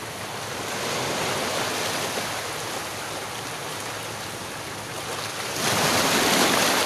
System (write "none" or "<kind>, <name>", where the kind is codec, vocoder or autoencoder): none